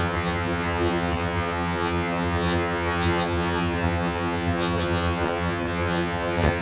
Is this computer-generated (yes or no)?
yes